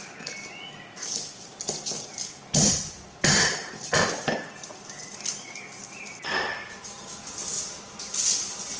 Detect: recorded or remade recorded